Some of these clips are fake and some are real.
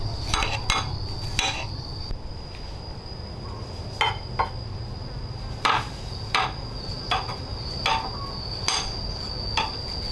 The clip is real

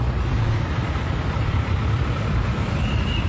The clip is fake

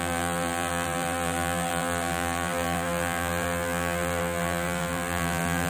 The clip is fake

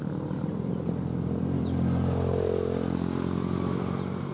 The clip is real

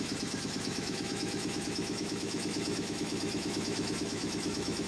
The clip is fake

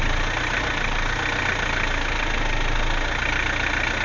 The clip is real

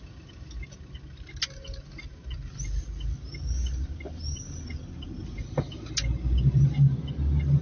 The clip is real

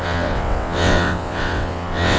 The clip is fake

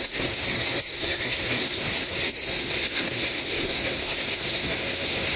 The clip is fake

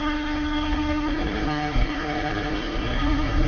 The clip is fake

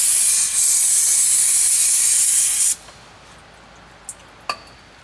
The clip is real